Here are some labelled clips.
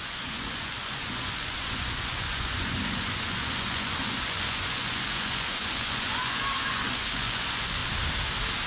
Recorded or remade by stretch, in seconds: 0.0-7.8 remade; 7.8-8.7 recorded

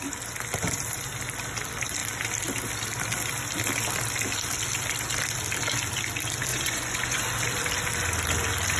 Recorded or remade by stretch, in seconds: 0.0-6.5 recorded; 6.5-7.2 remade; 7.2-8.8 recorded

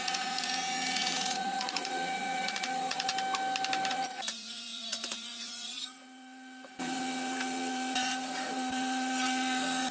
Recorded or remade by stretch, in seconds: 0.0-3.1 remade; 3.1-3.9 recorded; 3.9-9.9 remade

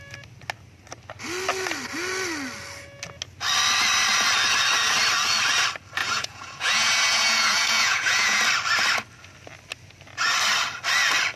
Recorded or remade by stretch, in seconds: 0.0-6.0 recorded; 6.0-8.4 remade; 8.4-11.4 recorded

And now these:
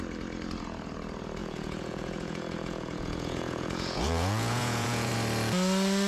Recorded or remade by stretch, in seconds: 0.0-1.4 recorded; 1.4-5.1 remade; 5.1-6.1 recorded

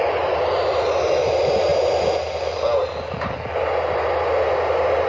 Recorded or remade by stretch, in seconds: 0.0-5.1 recorded

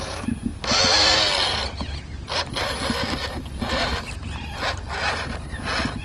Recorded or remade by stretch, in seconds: 0.0-6.0 recorded